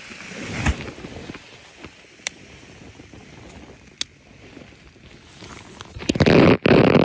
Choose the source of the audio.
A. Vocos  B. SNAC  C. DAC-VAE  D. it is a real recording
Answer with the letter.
D